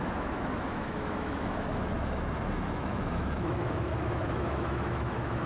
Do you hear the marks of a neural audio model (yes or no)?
yes